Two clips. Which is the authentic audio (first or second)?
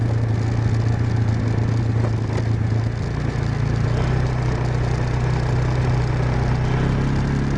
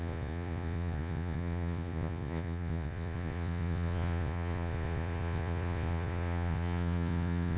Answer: first